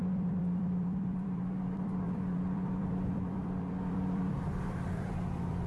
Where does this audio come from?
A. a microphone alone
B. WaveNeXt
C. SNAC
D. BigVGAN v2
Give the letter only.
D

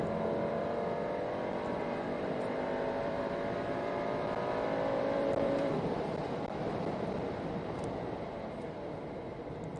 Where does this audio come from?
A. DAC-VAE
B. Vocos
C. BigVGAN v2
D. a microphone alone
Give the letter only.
C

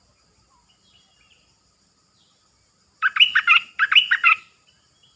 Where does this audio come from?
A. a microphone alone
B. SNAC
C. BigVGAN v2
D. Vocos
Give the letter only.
A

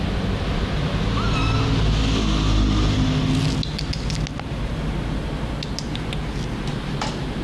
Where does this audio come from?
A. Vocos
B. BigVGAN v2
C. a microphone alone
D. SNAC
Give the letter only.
C